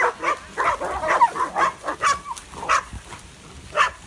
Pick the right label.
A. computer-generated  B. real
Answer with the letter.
B